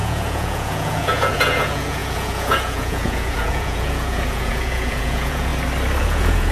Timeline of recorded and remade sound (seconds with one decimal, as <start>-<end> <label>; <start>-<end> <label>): 0.0-5.5 remade; 5.5-6.0 recorded; 6.0-6.5 remade